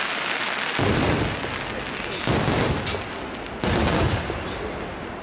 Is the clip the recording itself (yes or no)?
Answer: yes